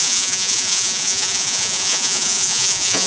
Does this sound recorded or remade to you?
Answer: remade